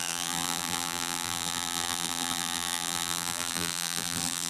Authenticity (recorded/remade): remade